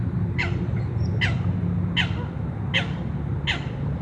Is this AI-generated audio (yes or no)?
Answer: no